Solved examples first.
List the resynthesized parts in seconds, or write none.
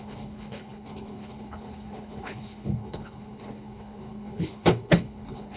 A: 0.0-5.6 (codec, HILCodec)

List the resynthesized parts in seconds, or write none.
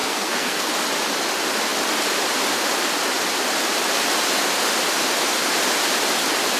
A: 0.0-0.7 (codec, SNAC)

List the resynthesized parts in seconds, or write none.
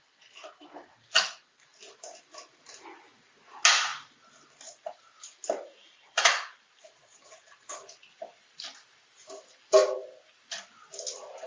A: 5.8-7.7 (vocoder, BigVGAN v2)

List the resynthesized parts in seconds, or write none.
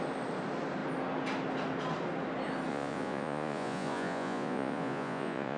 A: 2.7-5.6 (vocoder, Vocos)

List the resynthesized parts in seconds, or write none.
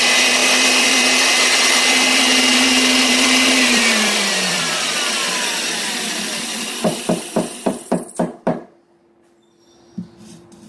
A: 0.0-10.7 (vocoder, BigVGAN v2)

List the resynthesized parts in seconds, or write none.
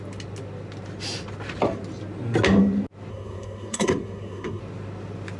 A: 3.1-4.6 (codec, SNAC)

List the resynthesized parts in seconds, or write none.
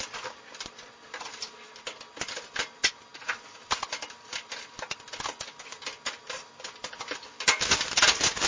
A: none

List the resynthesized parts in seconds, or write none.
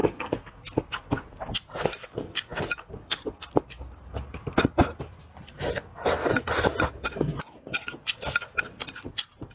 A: none